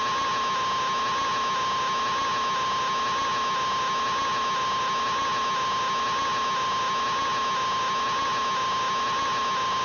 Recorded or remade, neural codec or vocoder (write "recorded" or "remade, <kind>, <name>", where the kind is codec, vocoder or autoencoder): recorded